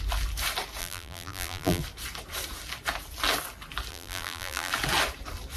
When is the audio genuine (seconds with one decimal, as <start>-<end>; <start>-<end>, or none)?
0.0-0.8; 1.8-3.9; 4.7-5.6